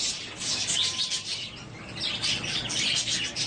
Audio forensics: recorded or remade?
recorded